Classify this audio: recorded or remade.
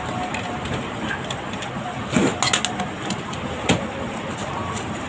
recorded